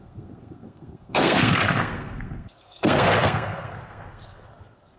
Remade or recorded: remade